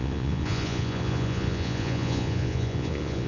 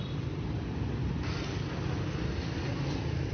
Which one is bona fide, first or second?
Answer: second